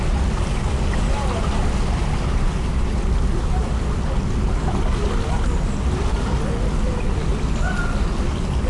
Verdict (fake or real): real